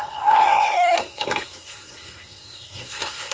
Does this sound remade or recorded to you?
remade